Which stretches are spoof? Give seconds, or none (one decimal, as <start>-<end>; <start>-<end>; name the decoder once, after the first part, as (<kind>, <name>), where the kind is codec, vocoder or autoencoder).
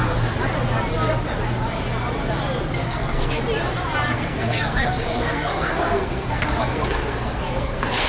2.8-3.4 (codec, SNAC); 4.1-8.1